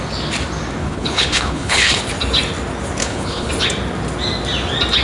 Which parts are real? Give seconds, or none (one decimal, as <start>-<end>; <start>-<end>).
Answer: 0.0-0.8; 2.0-3.0; 3.5-5.0